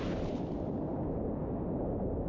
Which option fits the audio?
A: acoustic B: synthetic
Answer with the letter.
A